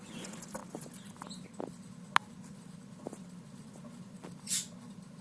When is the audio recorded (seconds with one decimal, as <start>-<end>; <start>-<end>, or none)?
0.0-5.2